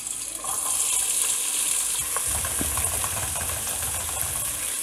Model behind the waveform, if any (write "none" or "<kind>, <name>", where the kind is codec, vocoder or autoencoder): none